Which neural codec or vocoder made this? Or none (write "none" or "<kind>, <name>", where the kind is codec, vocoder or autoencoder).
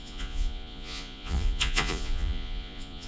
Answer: vocoder, Vocos